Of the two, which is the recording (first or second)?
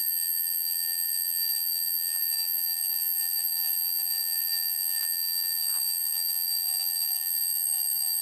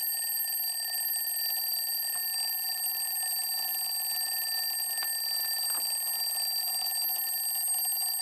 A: second